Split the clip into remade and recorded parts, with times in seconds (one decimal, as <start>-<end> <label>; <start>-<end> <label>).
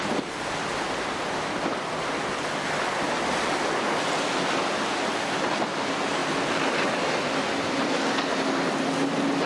0.0-9.5 recorded